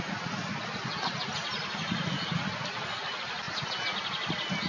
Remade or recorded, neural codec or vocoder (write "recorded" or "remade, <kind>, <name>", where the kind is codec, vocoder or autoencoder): recorded